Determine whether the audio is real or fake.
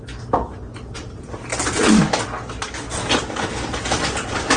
real